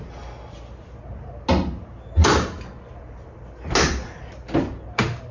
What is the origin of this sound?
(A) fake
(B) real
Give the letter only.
B